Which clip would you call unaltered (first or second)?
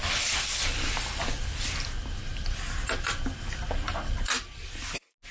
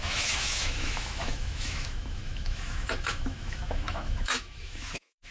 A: first